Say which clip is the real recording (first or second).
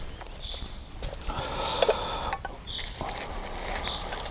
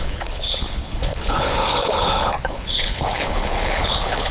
first